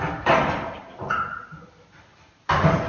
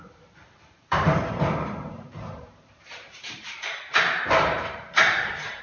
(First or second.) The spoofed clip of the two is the second